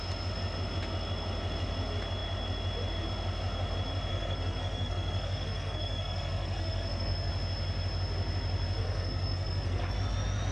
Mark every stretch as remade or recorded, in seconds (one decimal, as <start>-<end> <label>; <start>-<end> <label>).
0.0-4.1 recorded; 4.1-7.3 remade; 7.3-8.8 recorded; 8.8-9.9 remade; 9.9-10.5 recorded